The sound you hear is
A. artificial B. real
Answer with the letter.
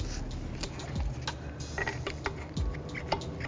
B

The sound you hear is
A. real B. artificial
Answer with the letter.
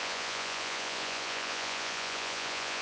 B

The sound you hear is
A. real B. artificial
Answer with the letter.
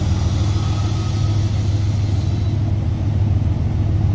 A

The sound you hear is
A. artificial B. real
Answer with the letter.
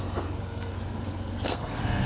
A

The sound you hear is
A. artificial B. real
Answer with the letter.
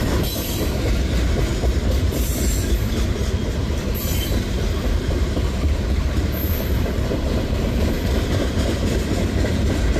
A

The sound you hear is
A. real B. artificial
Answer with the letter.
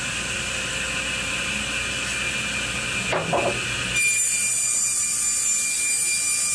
A